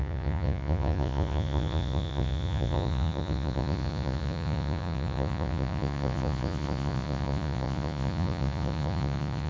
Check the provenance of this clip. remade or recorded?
remade